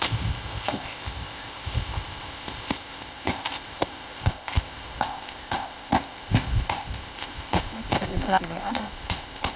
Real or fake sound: fake